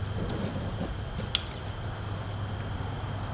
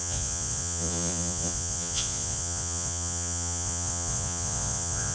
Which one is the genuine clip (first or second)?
first